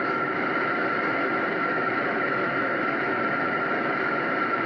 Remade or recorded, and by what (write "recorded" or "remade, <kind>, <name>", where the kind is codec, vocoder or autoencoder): remade, autoencoder, DAC-VAE